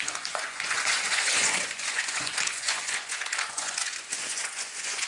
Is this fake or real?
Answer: fake